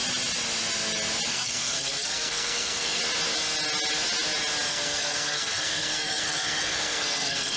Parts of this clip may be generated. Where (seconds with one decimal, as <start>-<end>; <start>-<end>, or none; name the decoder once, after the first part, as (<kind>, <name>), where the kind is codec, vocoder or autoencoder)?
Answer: 1.3-3.0 (codec, SNAC); 4.7-7.6